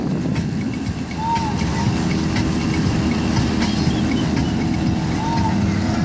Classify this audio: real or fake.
real